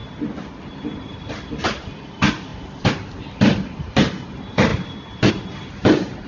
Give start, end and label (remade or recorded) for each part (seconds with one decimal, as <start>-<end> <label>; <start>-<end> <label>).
0.0-0.7 recorded; 0.7-6.3 remade